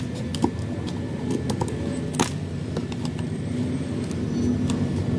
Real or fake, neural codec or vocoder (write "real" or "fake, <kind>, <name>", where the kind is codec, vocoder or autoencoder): real